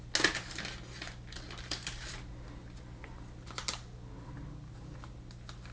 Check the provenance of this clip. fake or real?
real